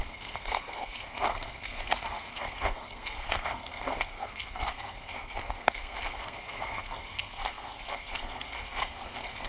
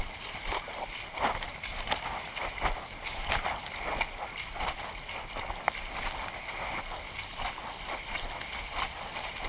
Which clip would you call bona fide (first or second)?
second